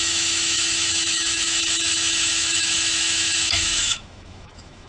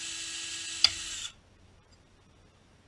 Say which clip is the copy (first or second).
first